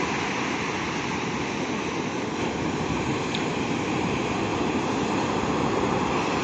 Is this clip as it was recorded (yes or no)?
yes